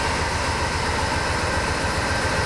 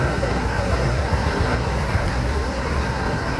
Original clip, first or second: first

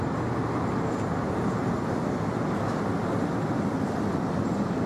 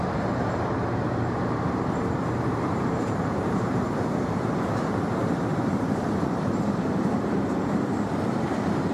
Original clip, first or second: first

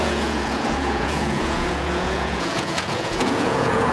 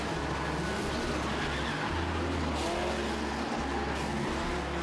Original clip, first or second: second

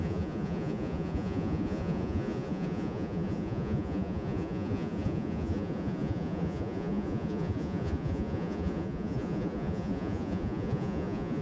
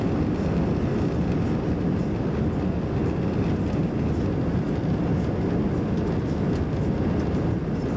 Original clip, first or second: second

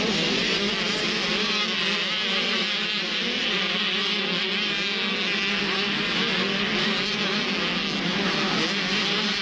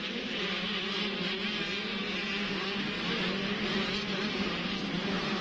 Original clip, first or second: first